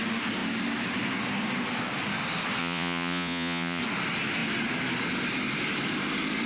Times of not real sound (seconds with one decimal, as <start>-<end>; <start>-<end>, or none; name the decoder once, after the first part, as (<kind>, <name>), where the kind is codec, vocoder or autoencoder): 2.6-3.8 (vocoder, Vocos)